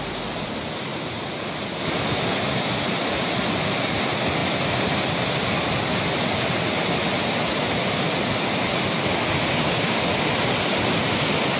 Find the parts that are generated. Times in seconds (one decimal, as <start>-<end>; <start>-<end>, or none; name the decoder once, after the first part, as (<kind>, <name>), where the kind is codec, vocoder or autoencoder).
none